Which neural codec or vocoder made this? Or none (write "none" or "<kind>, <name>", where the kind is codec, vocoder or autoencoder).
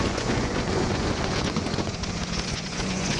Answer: vocoder, Vocos